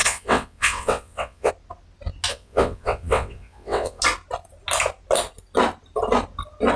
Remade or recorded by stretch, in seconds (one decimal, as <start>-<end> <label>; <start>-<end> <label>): 0.0-1.5 remade; 1.5-2.3 recorded; 2.3-4.0 remade; 4.0-6.8 recorded